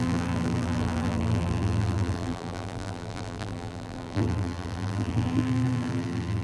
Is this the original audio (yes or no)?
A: no